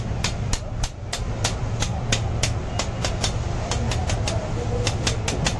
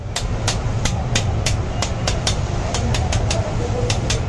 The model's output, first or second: second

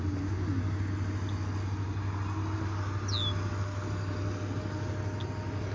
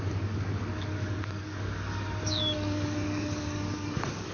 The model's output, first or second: second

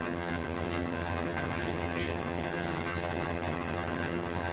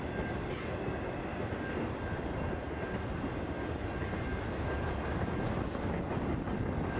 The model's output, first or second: first